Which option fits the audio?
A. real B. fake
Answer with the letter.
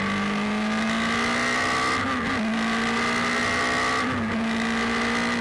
A